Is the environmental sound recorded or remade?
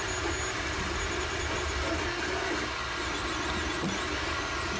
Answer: recorded